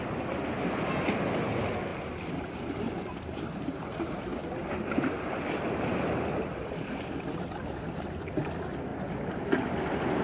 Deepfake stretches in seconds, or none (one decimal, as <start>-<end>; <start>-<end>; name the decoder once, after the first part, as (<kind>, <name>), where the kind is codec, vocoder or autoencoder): none